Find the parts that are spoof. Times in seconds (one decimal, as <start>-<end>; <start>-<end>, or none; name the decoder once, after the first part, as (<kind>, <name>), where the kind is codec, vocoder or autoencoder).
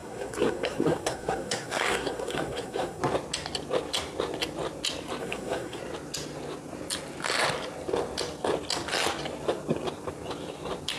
0.0-3.0 (codec, SNAC); 5.2-5.8